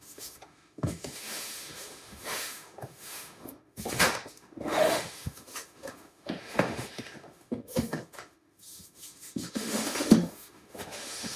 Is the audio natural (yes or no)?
no